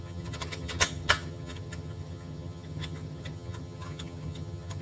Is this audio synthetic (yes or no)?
yes